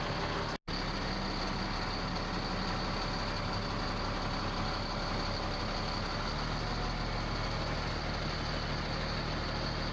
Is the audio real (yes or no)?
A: yes